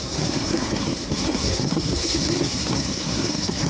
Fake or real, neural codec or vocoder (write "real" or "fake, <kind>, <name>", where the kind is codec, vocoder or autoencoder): fake, codec, SNAC